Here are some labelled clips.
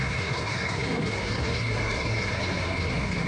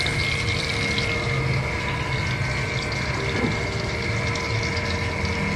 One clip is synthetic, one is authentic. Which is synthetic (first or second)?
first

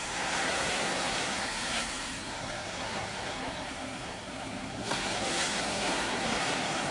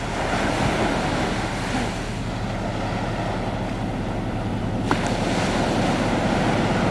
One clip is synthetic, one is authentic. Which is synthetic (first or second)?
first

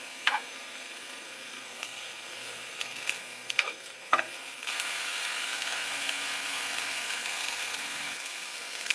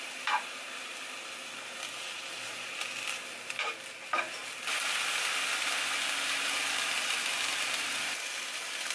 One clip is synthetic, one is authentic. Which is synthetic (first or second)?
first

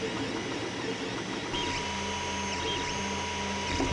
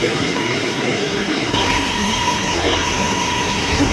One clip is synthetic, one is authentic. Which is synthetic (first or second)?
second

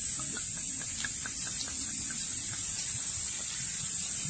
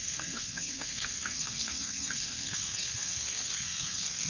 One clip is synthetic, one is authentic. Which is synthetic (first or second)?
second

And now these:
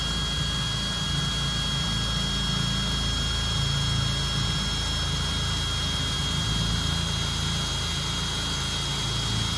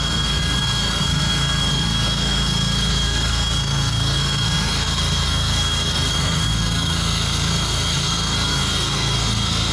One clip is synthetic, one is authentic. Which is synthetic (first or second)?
second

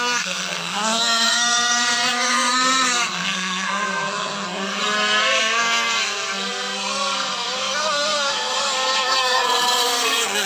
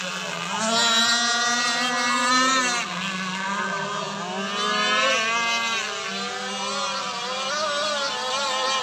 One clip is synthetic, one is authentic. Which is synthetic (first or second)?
first